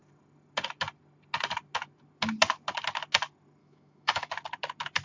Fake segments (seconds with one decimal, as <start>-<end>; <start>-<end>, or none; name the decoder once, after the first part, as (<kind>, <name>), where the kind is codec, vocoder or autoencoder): 3.6-4.3 (autoencoder, DAC-VAE)